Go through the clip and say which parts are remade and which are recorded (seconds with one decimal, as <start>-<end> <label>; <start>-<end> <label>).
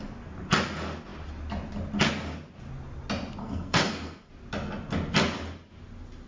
0.0-3.4 recorded; 3.4-4.3 remade; 4.3-6.3 recorded